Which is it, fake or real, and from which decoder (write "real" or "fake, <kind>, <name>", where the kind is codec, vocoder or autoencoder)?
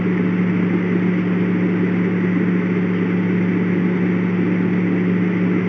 real